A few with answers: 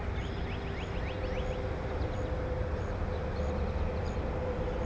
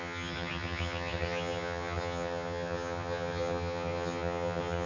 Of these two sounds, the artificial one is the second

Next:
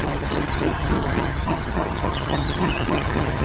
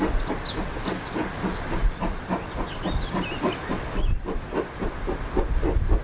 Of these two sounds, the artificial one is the first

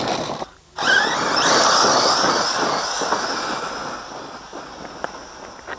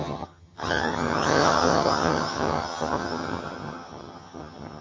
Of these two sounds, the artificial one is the second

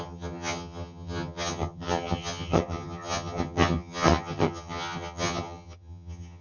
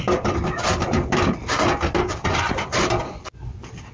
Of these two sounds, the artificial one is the first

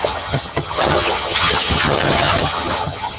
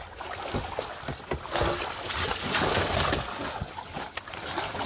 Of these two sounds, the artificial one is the first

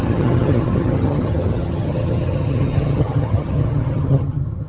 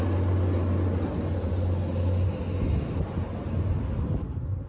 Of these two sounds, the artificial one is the first